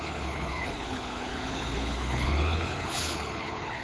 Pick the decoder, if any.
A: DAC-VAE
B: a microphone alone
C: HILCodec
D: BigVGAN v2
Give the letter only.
C